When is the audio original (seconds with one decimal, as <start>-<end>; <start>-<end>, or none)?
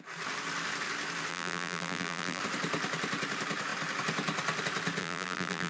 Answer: 0.0-1.3; 2.4-5.0